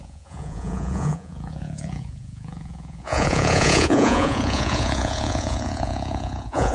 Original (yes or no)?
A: no